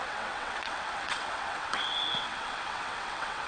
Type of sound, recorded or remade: remade